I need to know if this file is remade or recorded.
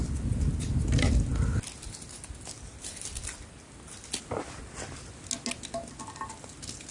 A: recorded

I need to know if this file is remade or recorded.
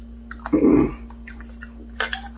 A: recorded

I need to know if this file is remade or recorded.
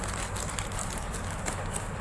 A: recorded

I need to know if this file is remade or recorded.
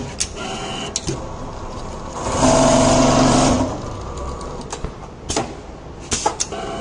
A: recorded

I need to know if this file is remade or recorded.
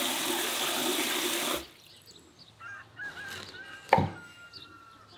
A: recorded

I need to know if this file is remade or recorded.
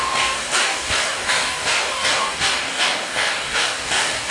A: remade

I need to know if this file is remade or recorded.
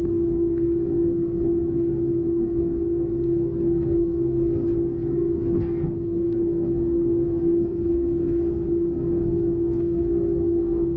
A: remade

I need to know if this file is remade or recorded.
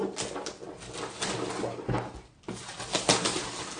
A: recorded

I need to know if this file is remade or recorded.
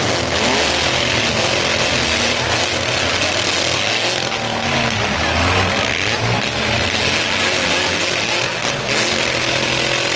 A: recorded